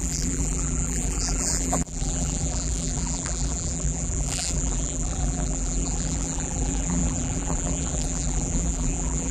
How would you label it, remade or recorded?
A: remade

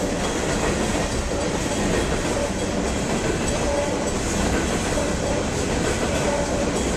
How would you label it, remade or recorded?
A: recorded